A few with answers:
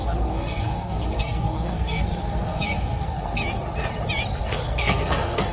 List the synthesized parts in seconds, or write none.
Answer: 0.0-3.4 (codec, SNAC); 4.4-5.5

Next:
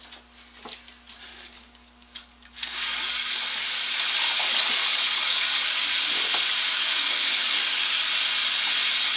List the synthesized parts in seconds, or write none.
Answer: 1.3-3.4 (codec, DAC); 4.8-6.0; 6.7-8.0

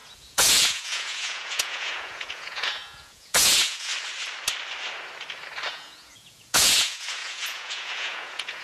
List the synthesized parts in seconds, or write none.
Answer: 0.0-3.9 (vocoder, Vocos); 5.7-8.6